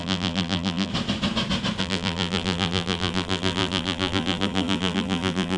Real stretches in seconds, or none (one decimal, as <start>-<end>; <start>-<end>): 0.9-1.8